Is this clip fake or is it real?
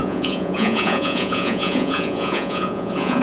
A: fake